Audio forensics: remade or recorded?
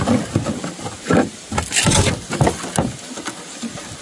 recorded